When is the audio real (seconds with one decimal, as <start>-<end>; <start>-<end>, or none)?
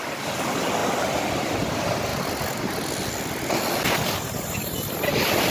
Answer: 0.0-5.5